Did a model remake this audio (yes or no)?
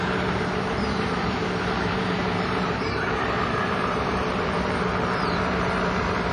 yes